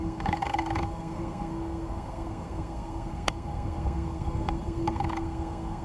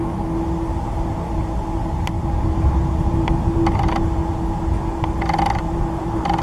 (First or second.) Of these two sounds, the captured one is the second